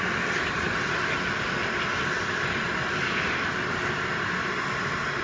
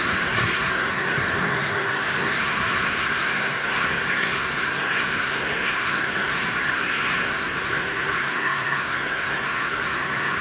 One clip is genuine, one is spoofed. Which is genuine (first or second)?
first